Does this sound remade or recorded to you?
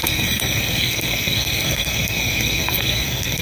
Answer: remade